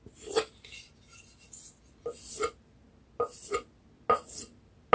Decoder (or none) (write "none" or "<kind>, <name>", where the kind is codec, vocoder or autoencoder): none